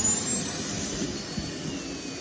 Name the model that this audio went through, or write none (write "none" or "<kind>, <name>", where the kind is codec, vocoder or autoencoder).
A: none